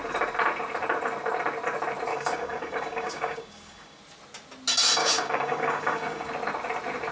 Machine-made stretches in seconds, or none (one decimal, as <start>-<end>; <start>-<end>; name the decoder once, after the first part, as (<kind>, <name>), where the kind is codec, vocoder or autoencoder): 2.1-4.0 (codec, DAC); 5.0-6.3